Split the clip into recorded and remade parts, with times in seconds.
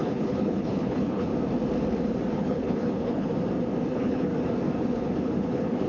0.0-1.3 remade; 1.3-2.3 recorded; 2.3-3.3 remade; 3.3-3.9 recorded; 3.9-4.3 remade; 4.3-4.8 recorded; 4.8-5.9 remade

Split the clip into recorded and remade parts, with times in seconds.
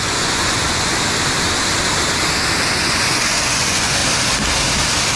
0.0-0.9 remade; 0.9-2.8 recorded; 2.8-4.0 remade; 4.0-5.2 recorded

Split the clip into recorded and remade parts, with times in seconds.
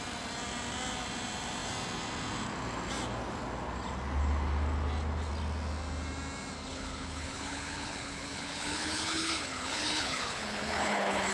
0.0-6.7 recorded; 6.7-11.3 remade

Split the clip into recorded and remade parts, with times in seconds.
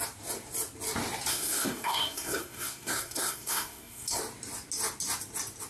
0.0-1.3 recorded; 1.3-4.2 remade; 4.2-5.7 recorded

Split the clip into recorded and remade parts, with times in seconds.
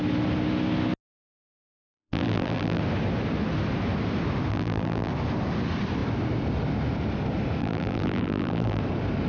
0.0-1.8 recorded; 1.8-2.8 remade; 2.8-4.5 recorded; 4.5-5.1 remade; 5.1-7.6 recorded; 7.6-8.8 remade; 8.8-9.3 recorded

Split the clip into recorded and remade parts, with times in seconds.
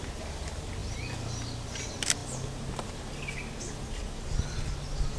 0.0-2.2 recorded; 2.2-5.2 remade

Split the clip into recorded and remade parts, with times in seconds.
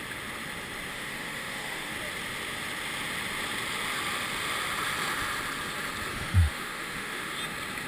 0.0-0.9 recorded; 0.9-1.9 remade; 1.9-6.1 recorded; 6.1-7.4 remade; 7.4-7.9 recorded